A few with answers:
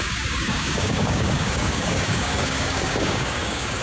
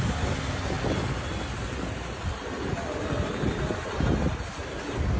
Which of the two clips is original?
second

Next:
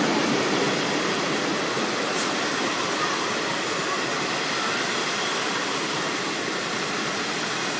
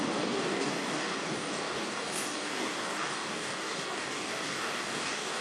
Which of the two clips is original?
first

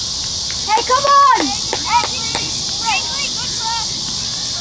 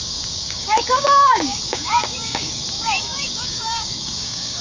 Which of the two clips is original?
first